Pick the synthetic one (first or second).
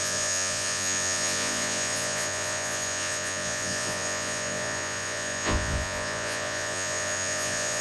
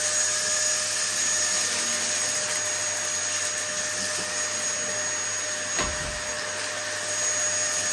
first